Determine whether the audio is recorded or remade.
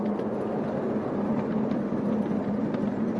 recorded